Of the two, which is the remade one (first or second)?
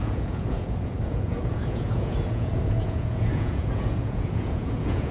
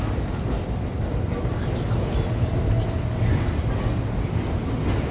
first